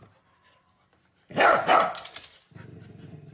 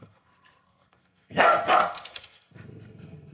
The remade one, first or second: second